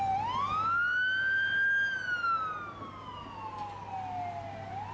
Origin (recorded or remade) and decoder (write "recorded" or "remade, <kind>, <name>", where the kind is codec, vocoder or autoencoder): recorded